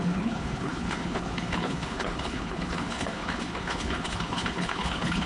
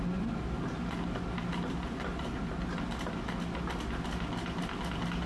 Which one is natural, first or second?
second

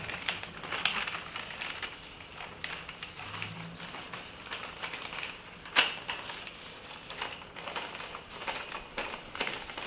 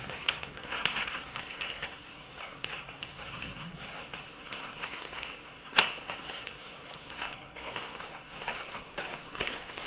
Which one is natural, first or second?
first